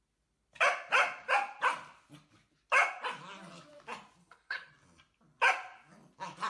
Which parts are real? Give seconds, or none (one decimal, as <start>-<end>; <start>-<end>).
0.0-4.2; 4.7-6.5

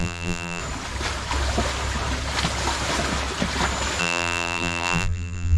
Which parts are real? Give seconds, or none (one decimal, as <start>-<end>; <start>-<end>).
0.6-4.0

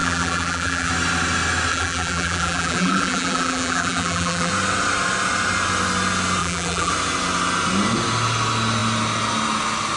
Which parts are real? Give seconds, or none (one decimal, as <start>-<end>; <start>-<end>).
0.9-1.7; 4.5-6.4; 6.9-10.0

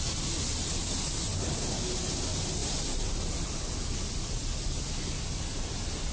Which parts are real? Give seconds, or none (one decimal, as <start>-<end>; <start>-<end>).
0.0-6.1

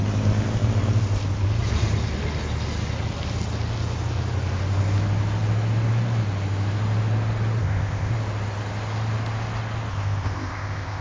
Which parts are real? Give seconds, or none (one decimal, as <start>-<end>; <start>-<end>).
0.0-7.6; 8.1-9.9

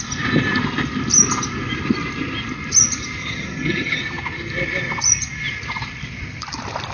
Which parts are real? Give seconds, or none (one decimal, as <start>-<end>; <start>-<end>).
0.0-3.2; 4.0-6.9

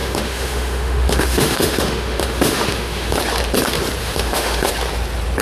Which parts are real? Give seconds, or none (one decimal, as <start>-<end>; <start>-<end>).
3.2-4.0; 4.7-5.4